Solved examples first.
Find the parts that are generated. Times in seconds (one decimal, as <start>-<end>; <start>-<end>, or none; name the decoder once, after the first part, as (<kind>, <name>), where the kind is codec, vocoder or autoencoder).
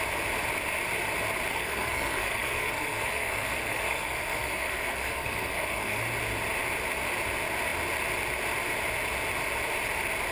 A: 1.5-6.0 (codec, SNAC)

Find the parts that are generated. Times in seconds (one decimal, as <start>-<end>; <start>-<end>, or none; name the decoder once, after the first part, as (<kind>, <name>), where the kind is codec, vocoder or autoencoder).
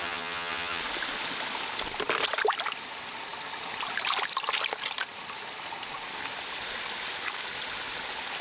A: 0.0-0.8 (vocoder, HiFi-GAN)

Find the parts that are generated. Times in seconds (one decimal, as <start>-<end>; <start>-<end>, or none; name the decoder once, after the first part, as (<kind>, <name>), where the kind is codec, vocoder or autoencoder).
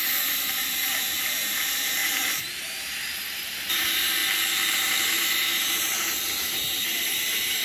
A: 0.0-4.2 (vocoder, BigVGAN v2); 4.7-7.6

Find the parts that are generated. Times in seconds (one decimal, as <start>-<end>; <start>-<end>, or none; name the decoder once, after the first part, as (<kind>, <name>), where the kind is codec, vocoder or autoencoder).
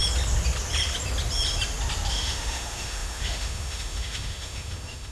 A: 2.1-5.1 (autoencoder, DAC-VAE)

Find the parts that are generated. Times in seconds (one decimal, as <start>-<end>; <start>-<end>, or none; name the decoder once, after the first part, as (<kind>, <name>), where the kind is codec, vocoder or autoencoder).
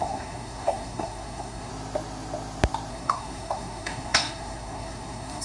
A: 0.0-1.7 (codec, SNAC); 2.9-5.4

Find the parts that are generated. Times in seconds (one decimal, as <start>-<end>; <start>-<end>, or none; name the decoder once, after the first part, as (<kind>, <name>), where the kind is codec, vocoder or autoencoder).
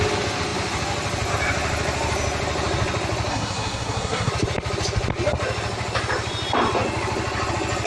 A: 3.3-4.3 (codec, SNAC)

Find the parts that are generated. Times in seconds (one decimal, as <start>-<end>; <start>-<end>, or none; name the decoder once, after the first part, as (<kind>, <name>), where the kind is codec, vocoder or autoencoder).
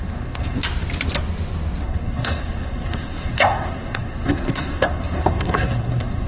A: 0.0-0.6 (codec, SNAC); 1.8-6.3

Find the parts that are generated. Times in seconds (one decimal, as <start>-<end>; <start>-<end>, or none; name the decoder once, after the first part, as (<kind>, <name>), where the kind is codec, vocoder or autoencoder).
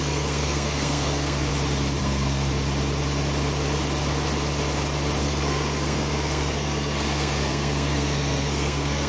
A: 0.0-1.5 (codec, SNAC); 2.0-2.5; 5.2-9.1